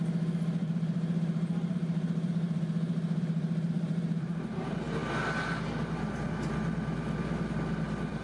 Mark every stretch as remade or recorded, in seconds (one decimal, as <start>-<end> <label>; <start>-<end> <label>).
0.0-0.6 recorded; 0.6-4.7 remade; 4.7-8.2 recorded